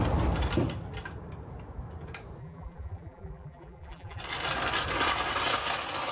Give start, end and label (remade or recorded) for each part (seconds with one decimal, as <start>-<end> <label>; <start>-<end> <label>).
0.0-2.4 recorded; 2.4-4.2 remade; 4.2-6.1 recorded